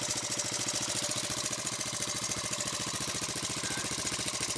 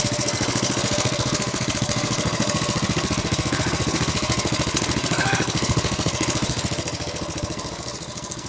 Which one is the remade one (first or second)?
second